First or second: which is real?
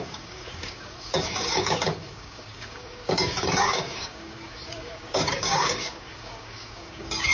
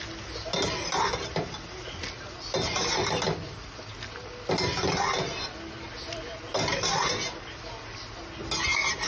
second